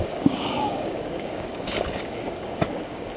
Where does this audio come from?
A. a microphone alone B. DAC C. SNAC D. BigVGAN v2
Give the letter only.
B